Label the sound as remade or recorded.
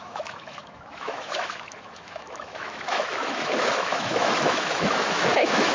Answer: remade